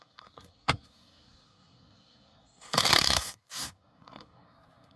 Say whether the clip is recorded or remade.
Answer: remade